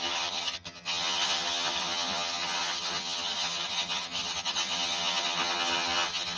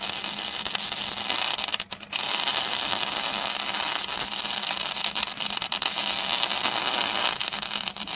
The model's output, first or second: first